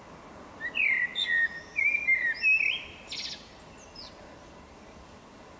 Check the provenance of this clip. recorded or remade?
recorded